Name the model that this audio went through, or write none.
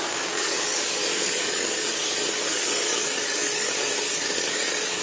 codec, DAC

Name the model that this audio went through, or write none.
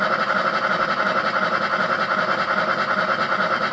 none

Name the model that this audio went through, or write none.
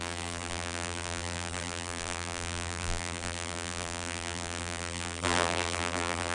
vocoder, BigVGAN v2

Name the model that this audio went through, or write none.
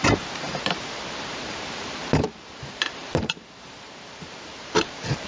vocoder, BigVGAN v2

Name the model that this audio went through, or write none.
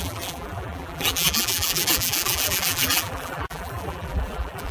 vocoder, BigVGAN v2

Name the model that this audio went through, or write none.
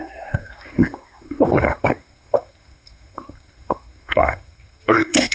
codec, SNAC